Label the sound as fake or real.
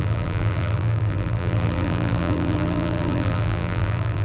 fake